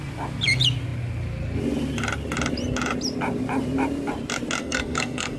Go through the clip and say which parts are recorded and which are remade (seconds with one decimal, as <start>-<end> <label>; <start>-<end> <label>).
0.0-4.6 recorded; 4.6-5.4 remade